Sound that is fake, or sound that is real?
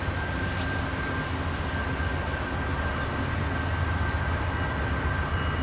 real